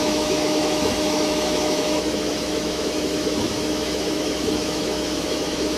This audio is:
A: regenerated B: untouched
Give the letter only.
A